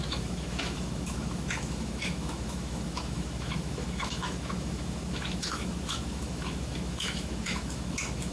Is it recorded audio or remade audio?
remade